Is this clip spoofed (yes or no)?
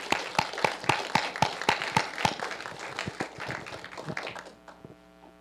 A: no